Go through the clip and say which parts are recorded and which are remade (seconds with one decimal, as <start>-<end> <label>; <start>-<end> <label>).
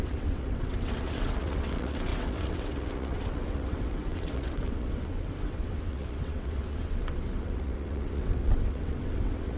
0.0-9.6 remade